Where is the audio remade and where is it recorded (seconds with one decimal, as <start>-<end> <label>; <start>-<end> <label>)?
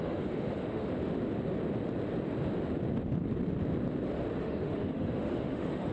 0.0-0.9 remade; 0.9-4.4 recorded; 4.4-5.9 remade